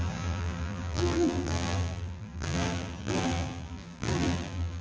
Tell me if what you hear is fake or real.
fake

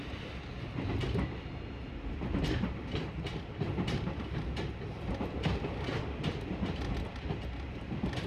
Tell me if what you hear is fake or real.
real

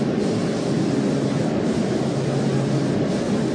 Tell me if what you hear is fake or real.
real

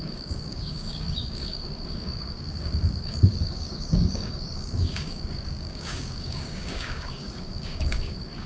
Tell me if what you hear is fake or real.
fake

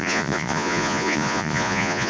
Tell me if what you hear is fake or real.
fake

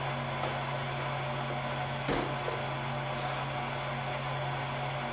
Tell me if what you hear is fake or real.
real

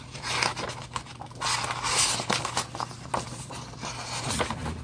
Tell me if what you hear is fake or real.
real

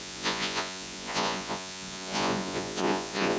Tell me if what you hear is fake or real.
fake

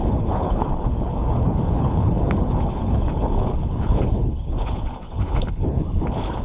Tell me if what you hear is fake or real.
fake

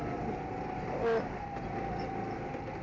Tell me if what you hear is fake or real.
real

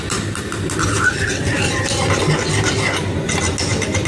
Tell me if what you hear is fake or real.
real